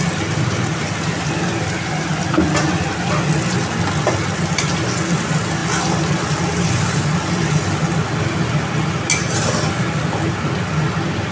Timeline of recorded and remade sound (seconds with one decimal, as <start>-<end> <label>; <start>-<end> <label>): 0.0-11.3 recorded